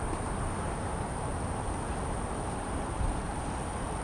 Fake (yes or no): yes